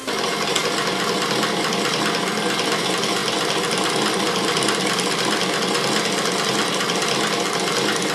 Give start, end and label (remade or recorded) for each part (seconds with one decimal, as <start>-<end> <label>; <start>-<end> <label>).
0.0-8.1 recorded